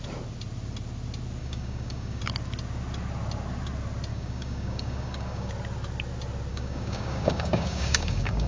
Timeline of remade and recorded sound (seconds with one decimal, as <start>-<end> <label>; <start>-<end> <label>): 0.0-1.4 recorded; 1.4-2.2 remade; 2.2-4.1 recorded; 4.1-5.5 remade; 5.5-6.5 recorded; 6.5-8.5 remade

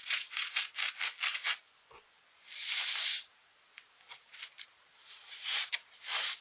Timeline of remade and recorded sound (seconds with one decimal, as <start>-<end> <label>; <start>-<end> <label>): 0.0-0.6 remade; 0.6-1.3 recorded; 1.3-2.4 remade; 2.4-6.4 recorded

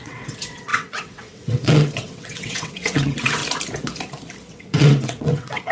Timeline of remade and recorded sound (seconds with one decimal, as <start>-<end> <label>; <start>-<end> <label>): 0.0-3.4 remade; 3.4-4.5 recorded; 4.5-5.7 remade

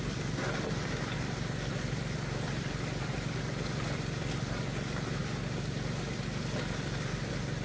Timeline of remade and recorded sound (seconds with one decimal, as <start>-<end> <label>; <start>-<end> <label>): 0.0-7.6 recorded

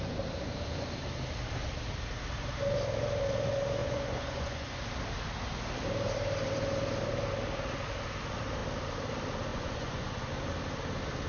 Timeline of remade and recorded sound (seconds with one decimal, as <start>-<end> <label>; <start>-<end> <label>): 0.0-3.8 recorded; 3.8-4.8 remade; 4.8-9.5 recorded; 9.5-10.3 remade; 10.3-11.3 recorded